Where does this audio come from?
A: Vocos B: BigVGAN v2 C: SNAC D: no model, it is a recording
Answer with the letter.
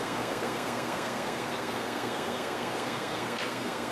C